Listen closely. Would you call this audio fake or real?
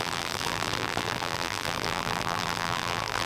fake